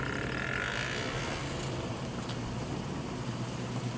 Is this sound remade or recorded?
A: recorded